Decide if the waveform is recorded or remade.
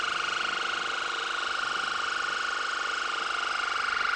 recorded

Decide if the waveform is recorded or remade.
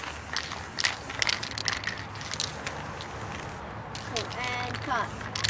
recorded